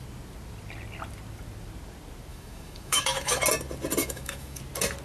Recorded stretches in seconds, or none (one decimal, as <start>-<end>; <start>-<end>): 0.0-2.3; 3.4-4.0; 4.6-5.0